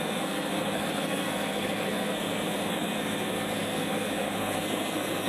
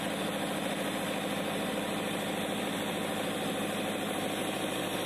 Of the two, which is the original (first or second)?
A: second